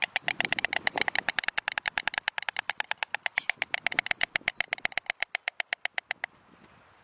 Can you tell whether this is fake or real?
real